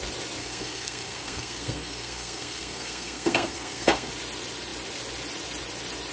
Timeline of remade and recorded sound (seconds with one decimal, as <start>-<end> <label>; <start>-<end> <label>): 0.0-0.4 recorded; 0.4-4.1 remade; 4.1-6.1 recorded

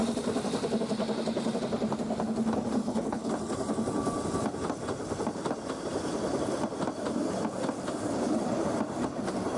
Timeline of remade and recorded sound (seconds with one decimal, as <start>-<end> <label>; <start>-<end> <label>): 0.0-2.8 recorded; 2.8-3.3 remade; 3.3-9.6 recorded

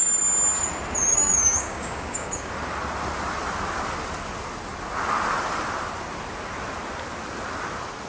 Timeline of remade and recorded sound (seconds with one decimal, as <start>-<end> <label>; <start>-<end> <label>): 0.0-1.1 recorded; 1.1-2.5 remade; 2.5-8.1 recorded

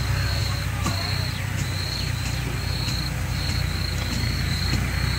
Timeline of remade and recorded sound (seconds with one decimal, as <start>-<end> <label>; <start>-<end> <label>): 0.0-0.4 recorded; 0.4-3.5 remade; 3.5-5.2 recorded

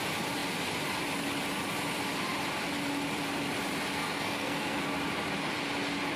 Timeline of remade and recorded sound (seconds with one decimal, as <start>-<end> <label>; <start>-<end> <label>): 0.0-3.9 recorded; 3.9-4.8 remade; 4.8-6.2 recorded

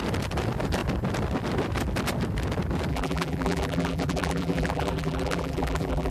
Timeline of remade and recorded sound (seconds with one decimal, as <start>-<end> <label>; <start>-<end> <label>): 0.0-2.9 recorded; 2.9-6.1 remade

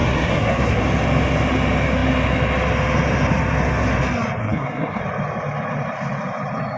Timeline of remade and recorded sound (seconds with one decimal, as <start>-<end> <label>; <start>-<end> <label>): 0.0-0.8 remade; 0.8-4.4 recorded; 4.4-5.0 remade; 5.0-6.8 recorded